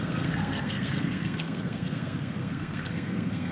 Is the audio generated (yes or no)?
yes